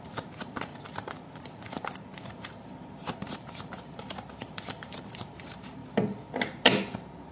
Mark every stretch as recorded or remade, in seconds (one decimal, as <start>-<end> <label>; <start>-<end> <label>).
0.0-5.8 remade; 5.8-7.3 recorded